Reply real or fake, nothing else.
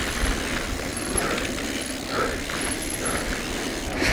real